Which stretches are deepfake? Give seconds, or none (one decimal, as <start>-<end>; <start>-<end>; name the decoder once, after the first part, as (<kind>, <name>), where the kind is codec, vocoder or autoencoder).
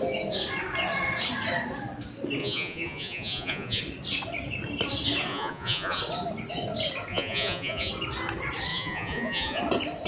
2.4-3.8 (vocoder, Vocos); 5.3-6.0; 7.1-7.9; 8.7-9.6